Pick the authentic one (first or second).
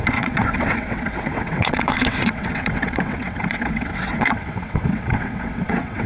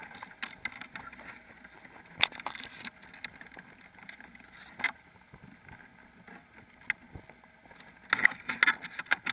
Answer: second